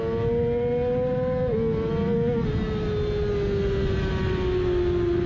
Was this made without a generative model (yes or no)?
yes